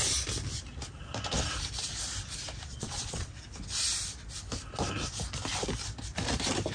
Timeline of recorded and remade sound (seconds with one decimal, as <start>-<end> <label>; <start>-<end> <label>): 0.0-2.7 recorded; 2.7-3.3 remade; 3.3-6.7 recorded